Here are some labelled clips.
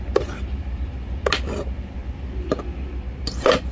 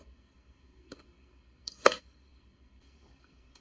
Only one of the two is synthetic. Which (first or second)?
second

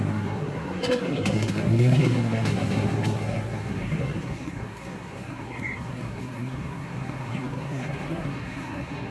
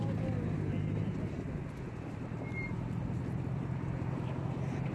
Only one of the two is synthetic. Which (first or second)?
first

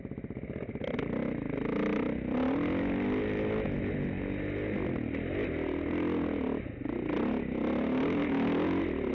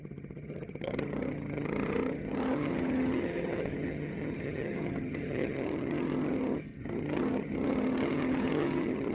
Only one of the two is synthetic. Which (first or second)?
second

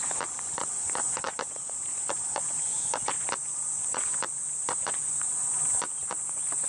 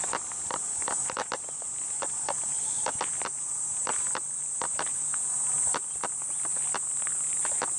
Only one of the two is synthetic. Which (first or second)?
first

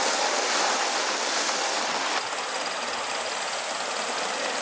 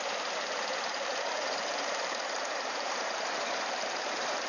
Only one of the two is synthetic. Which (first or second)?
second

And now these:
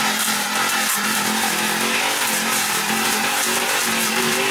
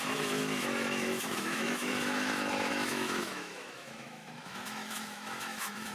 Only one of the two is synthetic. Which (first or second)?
second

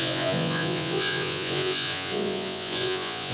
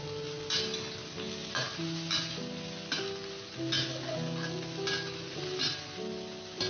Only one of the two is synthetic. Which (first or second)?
first